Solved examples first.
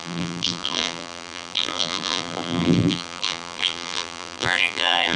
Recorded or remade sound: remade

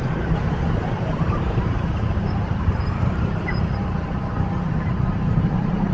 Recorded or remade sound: remade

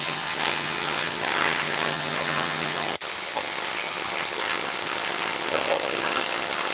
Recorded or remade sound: remade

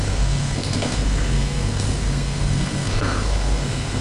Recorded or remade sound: remade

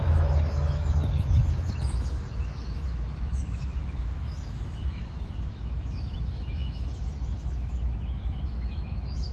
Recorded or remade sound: remade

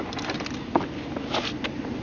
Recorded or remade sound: recorded